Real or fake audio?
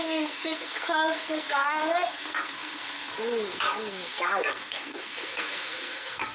fake